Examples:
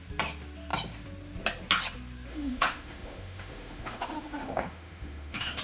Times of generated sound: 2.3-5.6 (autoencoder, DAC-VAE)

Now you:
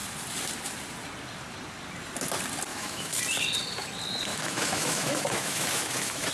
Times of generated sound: 2.7-3.2 (autoencoder, DAC-VAE); 4.3-6.3

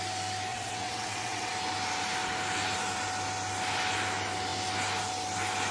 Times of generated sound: 0.5-1.5 (vocoder, WaveNeXt)

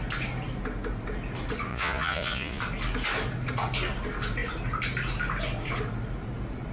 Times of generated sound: 1.7-2.6 (vocoder, Vocos)

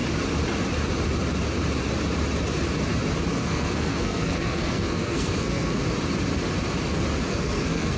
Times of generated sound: 3.3-5.8 (codec, SNAC); 7.3-8.0

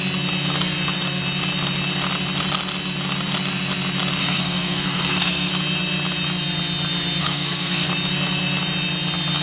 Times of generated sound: 4.2-5.5 (codec, SNAC); 7.2-7.9

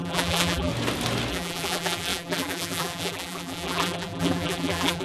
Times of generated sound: 0.0-0.7 (vocoder, BigVGAN v2); 1.3-5.0

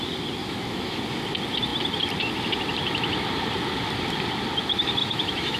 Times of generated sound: 0.4-1.0 (autoencoder, DAC-VAE); 5.0-5.6